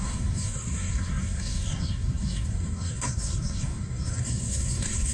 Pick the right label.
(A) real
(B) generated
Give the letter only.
B